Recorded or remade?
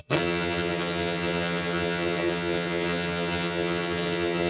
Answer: remade